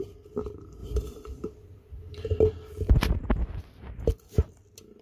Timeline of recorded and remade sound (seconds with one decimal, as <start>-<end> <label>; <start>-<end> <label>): 0.0-5.0 recorded